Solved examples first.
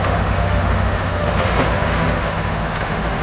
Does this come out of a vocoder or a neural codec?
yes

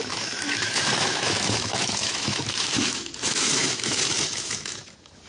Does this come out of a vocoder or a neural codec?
yes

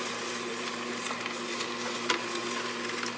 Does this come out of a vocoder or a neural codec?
no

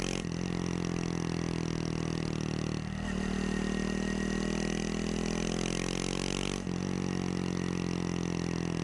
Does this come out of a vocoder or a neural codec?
no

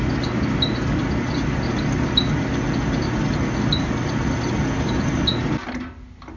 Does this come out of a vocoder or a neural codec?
no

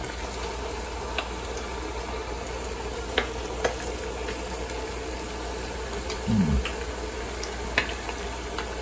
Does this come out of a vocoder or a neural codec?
no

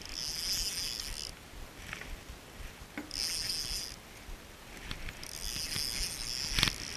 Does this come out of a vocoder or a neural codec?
no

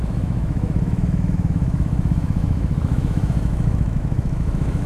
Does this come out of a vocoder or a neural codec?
yes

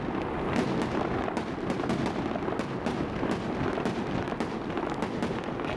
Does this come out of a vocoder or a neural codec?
no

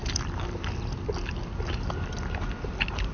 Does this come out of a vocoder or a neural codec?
no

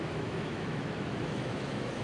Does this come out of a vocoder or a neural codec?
yes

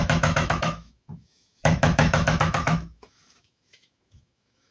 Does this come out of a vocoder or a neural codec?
yes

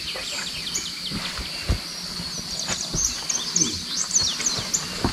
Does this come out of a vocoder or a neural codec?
no